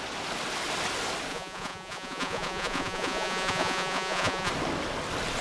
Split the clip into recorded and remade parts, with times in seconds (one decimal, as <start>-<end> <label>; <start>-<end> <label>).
0.0-1.3 recorded; 1.3-4.5 remade; 4.5-5.4 recorded